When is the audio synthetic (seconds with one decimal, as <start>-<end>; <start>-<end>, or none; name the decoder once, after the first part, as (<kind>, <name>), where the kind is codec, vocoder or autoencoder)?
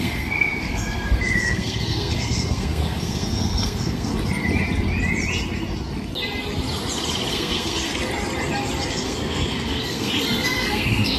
0.0-4.1 (codec, SNAC); 7.3-7.9; 8.9-11.2